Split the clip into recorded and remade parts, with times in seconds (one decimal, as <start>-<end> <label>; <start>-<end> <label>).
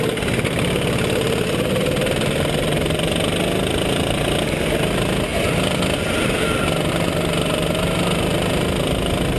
0.0-9.4 recorded